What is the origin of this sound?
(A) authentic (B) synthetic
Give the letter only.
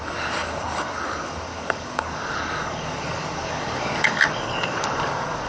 B